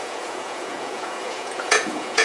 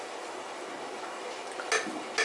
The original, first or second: second